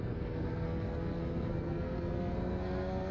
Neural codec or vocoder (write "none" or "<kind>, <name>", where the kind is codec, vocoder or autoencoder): codec, SNAC